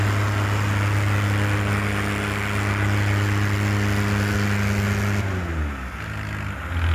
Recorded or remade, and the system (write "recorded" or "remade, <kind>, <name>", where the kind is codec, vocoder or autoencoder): recorded